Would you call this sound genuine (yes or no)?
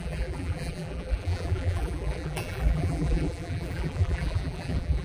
no